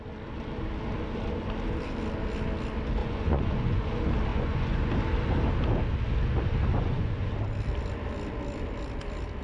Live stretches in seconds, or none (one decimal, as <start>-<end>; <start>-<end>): 0.0-3.0; 3.9-4.3; 4.9-6.7; 7.3-9.4